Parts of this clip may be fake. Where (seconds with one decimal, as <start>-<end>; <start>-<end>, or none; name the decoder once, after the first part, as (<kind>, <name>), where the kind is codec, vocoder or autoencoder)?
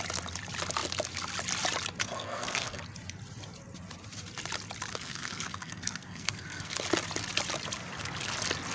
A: 2.0-2.8 (codec, SNAC); 4.9-6.8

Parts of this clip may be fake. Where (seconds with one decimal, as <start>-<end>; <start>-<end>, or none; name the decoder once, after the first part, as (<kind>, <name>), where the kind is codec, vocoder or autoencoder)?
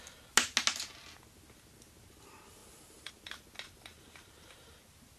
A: 2.6-3.1 (vocoder, BigVGAN v2); 3.9-4.7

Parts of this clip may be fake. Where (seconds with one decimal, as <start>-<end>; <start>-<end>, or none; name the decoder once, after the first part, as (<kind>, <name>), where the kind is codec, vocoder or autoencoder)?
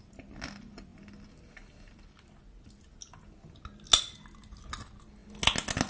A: none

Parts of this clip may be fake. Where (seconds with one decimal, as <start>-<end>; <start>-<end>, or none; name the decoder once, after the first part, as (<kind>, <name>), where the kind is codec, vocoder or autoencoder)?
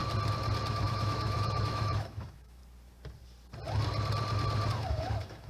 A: 0.7-2.6 (autoencoder, DAC-VAE); 4.7-5.5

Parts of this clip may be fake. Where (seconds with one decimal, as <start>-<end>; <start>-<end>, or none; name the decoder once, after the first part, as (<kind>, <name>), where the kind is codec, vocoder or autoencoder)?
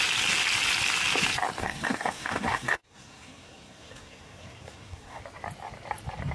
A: 1.6-5.2 (codec, SNAC)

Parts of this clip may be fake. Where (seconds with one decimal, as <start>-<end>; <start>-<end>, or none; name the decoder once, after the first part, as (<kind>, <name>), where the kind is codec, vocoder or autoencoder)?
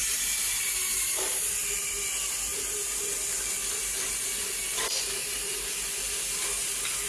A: 0.0-1.5 (vocoder, BigVGAN v2); 2.5-3.0; 5.2-6.0